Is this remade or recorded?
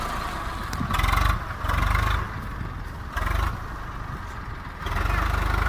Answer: recorded